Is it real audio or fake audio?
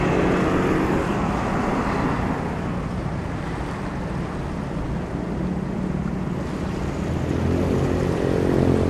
real